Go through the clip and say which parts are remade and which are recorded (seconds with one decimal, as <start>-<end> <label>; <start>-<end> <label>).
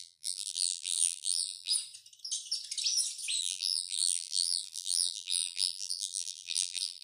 0.0-1.7 remade; 1.7-3.4 recorded; 3.4-7.0 remade